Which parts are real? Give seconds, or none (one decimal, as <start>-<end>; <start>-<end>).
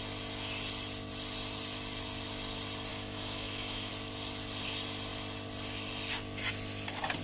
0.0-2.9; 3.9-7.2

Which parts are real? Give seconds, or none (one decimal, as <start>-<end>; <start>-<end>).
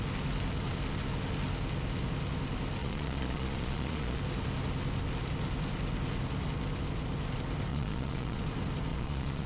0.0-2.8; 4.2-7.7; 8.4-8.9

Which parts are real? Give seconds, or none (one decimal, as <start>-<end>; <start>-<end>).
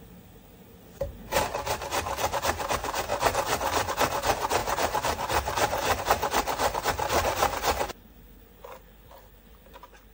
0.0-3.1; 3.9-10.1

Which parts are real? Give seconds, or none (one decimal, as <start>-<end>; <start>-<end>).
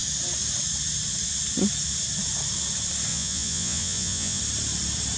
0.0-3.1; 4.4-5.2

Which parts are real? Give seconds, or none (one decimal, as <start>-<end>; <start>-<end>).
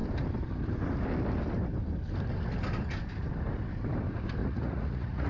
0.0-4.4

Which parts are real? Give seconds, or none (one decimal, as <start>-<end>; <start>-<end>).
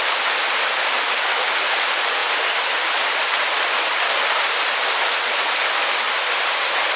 0.0-7.0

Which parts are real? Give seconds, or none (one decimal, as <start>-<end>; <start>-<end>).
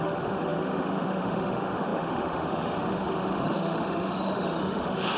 none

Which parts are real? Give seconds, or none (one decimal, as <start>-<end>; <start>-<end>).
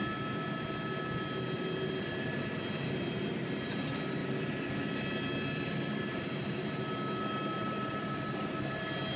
0.0-9.2